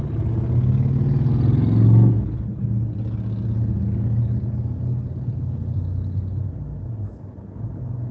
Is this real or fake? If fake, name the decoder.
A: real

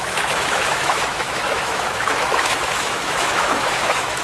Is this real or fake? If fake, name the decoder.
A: fake, autoencoder, DAC-VAE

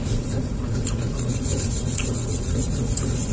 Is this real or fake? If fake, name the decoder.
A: fake, vocoder, Vocos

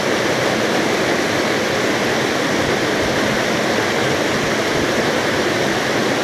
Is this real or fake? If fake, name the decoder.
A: real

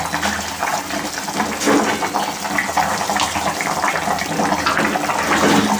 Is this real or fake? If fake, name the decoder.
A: real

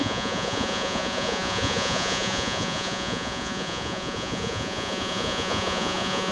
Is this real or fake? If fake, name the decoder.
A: fake, vocoder, Vocos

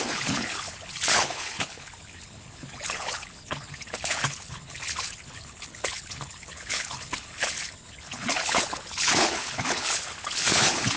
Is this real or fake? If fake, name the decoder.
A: fake, codec, HILCodec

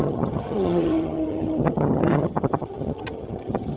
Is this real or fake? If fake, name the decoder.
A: fake, vocoder, HiFi-GAN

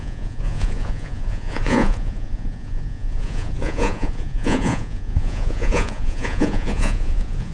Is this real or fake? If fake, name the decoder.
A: fake, vocoder, Vocos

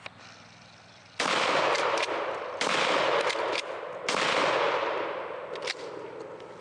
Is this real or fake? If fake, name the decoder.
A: real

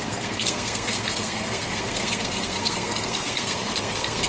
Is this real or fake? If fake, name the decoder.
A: fake, codec, SNAC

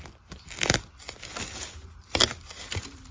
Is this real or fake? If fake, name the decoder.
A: real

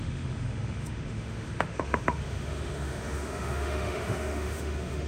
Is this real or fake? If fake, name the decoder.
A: fake, autoencoder, DAC-VAE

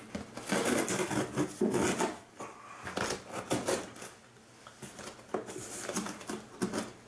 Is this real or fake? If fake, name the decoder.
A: real